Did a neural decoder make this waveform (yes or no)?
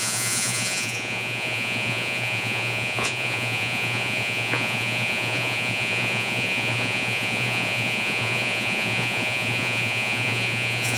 yes